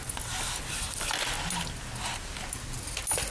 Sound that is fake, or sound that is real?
real